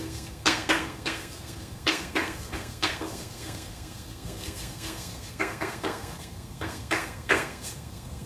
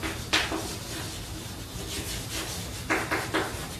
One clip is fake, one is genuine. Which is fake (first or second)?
first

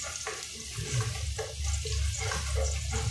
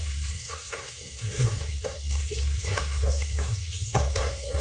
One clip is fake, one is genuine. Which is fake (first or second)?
second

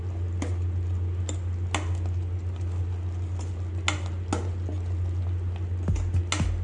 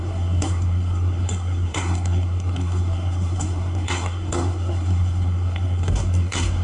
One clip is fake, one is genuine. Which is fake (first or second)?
second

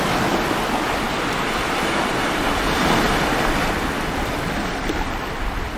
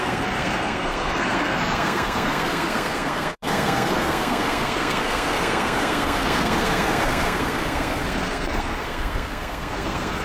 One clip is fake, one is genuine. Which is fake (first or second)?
second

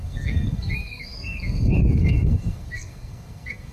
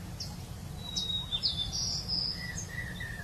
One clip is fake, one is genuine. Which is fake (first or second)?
first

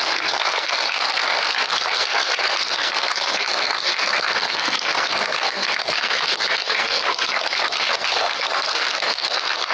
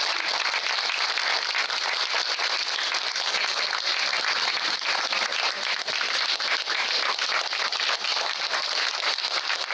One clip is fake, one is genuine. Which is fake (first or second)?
first